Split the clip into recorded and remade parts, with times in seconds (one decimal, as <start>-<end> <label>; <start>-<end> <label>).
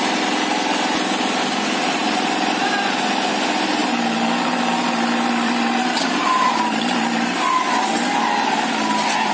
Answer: 0.0-3.8 recorded; 3.8-7.4 remade; 7.4-9.3 recorded